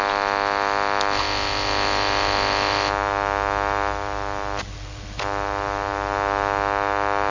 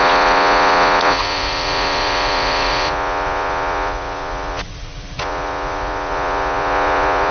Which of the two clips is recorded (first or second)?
first